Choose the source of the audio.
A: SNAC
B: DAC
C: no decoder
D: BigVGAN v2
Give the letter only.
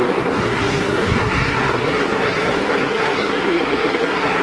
A